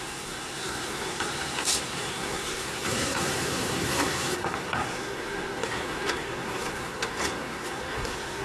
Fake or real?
fake